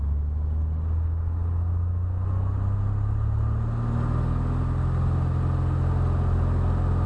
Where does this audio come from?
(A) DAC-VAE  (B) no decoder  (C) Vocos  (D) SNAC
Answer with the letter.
B